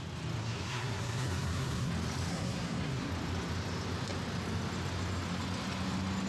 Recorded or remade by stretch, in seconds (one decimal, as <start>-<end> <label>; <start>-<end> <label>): 0.0-0.4 recorded; 0.4-1.9 remade; 1.9-2.3 recorded; 2.3-3.1 remade; 3.1-6.3 recorded